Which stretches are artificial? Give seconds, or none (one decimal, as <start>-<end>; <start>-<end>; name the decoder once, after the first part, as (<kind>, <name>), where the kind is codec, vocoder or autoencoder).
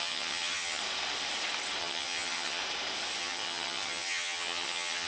0.0-0.8 (vocoder, HiFi-GAN); 1.8-2.6; 3.2-5.1